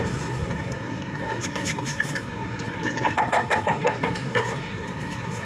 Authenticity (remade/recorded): remade